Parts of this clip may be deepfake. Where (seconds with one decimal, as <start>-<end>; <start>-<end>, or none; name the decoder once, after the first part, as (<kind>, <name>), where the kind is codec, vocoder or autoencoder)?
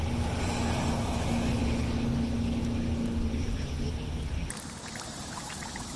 0.9-1.6 (autoencoder, DAC-VAE); 5.2-6.0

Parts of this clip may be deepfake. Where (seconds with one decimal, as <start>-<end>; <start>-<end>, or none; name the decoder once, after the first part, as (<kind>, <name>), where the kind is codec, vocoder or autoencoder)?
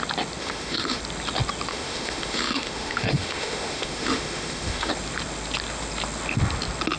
0.4-1.0 (autoencoder, DAC-VAE); 1.7-4.9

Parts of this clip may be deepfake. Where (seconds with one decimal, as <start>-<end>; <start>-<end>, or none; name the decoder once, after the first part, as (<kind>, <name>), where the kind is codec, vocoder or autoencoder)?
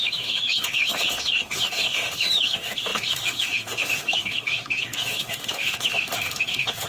0.0-6.9 (autoencoder, DAC-VAE)